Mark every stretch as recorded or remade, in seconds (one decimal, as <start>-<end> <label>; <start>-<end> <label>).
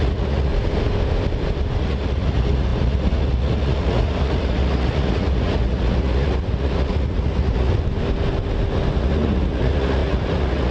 0.0-0.5 remade; 0.5-1.8 recorded; 1.8-7.7 remade; 7.7-8.9 recorded; 8.9-10.7 remade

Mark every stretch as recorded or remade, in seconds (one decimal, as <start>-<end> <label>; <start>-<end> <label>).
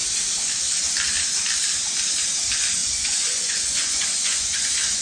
0.0-2.8 recorded; 2.8-5.0 remade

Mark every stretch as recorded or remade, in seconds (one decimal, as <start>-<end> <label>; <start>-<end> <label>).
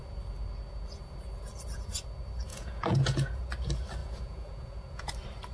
0.0-2.5 recorded; 2.5-3.5 remade; 3.5-4.0 recorded; 4.0-5.1 remade; 5.1-5.5 recorded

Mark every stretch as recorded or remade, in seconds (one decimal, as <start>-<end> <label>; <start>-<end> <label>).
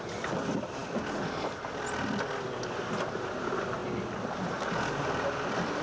0.0-5.8 recorded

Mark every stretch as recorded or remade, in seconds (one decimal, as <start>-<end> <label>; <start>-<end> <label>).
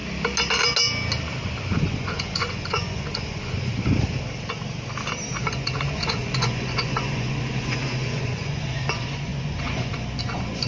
0.0-1.7 recorded; 1.7-3.7 remade; 3.7-5.4 recorded; 5.4-10.7 remade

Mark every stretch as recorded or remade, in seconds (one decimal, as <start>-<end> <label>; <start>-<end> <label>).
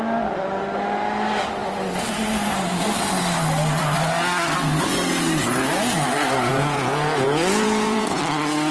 0.0-6.5 recorded; 6.5-8.2 remade; 8.2-8.7 recorded